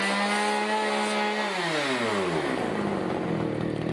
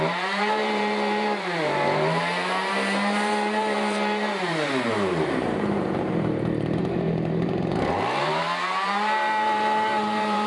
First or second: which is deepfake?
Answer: second